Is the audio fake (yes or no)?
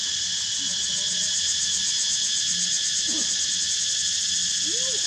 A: no